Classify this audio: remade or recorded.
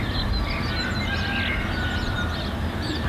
recorded